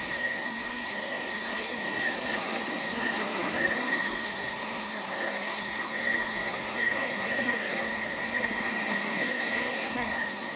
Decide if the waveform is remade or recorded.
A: remade